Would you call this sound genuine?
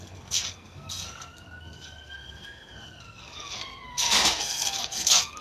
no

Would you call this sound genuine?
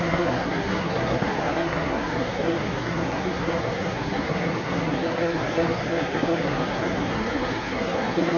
no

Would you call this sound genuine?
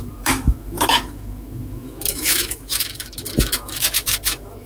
no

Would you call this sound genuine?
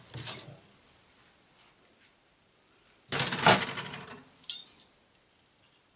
yes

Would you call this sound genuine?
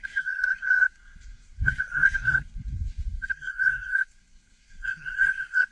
no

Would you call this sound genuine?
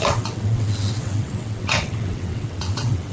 no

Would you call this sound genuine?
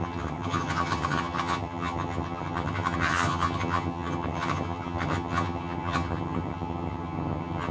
no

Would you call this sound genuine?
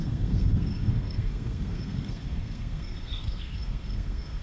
no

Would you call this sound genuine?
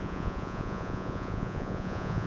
no